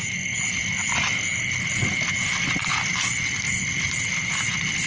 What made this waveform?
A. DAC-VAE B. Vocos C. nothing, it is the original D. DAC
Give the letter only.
C